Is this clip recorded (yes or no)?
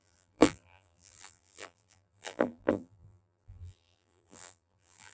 no